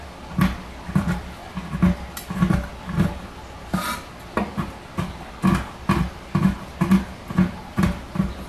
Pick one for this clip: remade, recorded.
recorded